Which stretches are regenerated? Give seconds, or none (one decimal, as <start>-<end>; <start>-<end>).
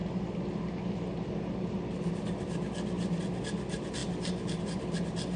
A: none